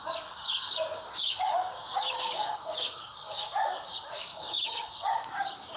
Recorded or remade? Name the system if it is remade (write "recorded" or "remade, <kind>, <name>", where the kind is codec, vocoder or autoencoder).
remade, codec, DAC